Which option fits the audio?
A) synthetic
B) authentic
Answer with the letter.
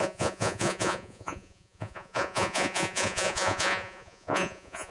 A